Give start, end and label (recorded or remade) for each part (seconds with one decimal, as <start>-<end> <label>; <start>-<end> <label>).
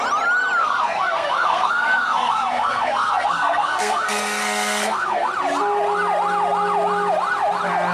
0.0-0.6 recorded; 0.6-5.3 remade; 5.3-7.9 recorded